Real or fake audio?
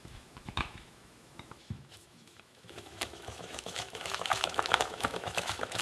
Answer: fake